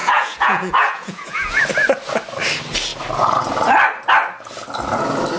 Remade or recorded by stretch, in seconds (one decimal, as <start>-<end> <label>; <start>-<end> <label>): 0.0-1.6 remade; 1.6-5.4 recorded